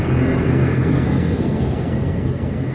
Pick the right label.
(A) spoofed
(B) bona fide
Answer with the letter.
A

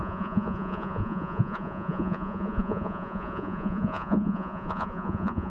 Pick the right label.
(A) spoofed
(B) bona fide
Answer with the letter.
A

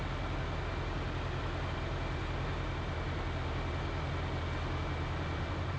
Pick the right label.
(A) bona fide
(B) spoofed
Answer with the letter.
A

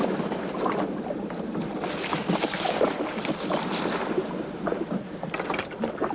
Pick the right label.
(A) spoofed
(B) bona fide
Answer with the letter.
B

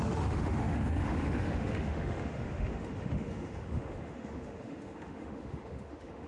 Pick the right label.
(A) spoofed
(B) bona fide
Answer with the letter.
A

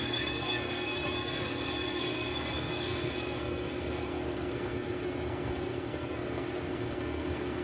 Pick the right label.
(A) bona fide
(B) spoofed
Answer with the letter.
B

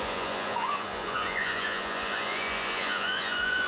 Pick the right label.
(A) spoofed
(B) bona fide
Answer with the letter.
A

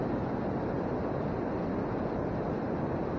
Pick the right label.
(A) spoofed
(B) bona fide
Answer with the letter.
B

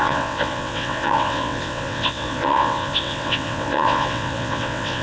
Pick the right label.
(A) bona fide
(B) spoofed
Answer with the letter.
B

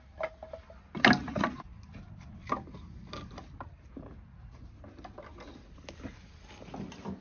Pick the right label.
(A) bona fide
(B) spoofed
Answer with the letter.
A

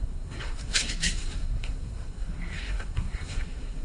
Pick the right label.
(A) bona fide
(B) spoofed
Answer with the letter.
B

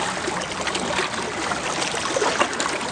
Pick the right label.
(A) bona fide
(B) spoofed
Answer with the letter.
A